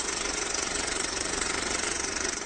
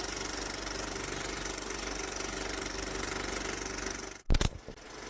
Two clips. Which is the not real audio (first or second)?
first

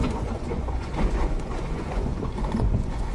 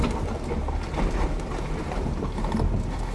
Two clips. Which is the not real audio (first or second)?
first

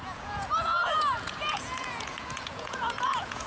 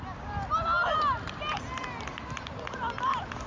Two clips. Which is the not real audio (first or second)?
first